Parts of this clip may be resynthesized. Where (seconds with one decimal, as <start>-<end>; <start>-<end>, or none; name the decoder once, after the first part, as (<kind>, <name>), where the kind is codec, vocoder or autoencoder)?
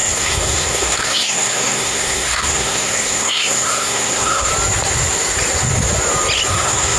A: 0.0-4.5 (codec, SNAC); 6.5-7.0